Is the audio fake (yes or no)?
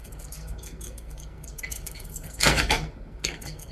yes